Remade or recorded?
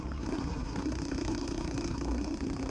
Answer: remade